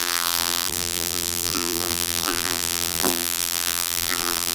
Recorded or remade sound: remade